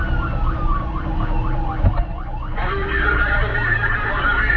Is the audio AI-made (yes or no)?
no